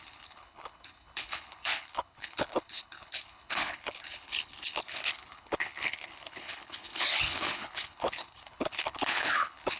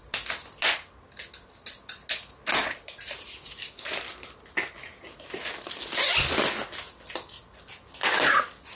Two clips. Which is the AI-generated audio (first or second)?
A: first